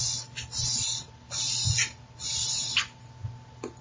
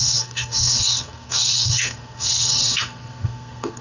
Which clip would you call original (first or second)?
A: first